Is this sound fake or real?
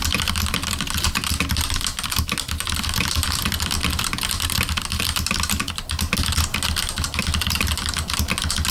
real